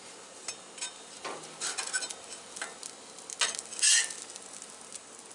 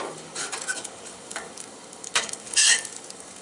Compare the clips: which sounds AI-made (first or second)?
second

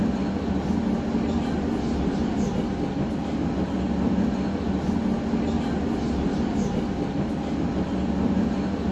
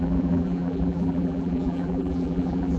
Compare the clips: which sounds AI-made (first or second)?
second